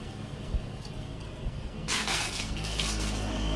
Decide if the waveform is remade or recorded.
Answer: remade